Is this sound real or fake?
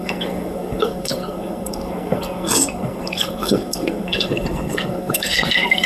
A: fake